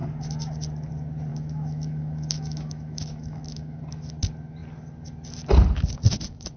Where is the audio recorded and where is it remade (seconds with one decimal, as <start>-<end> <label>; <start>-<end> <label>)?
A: 0.0-1.3 recorded; 1.3-3.8 remade; 3.8-6.6 recorded